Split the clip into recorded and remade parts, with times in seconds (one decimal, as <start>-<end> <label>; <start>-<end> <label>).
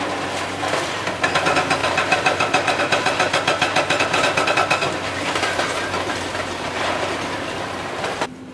0.0-8.5 remade